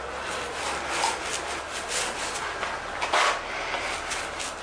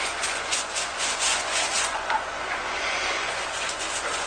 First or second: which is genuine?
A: first